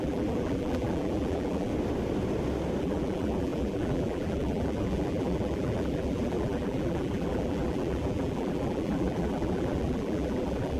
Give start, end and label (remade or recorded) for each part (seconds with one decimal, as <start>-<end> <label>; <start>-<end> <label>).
0.0-1.7 remade; 1.7-2.8 recorded; 2.8-10.8 remade